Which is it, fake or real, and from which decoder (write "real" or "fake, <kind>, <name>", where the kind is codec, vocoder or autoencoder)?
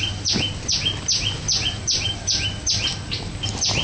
real